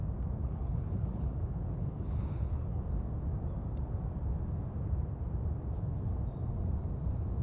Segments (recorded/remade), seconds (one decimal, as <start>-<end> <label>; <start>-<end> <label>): 0.0-0.4 recorded; 0.4-2.8 remade; 2.8-7.4 recorded